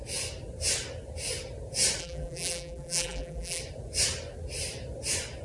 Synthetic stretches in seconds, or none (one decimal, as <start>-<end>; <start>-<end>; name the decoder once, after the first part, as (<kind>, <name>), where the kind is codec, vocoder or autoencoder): 2.0-3.6 (vocoder, BigVGAN v2)